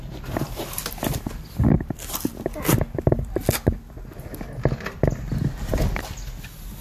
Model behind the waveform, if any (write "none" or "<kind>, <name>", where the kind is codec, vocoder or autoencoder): none